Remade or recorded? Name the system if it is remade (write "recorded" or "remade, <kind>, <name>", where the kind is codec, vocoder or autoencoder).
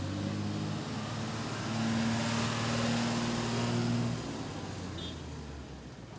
recorded